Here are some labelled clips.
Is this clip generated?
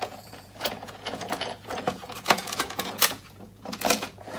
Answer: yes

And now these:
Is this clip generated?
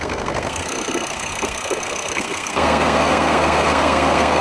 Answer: yes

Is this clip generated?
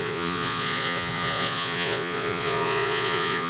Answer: yes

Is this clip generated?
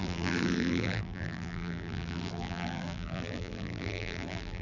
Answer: yes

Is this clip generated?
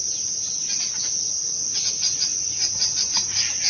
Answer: no